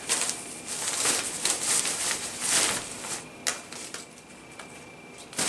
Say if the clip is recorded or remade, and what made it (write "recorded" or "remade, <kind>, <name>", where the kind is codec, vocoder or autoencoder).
recorded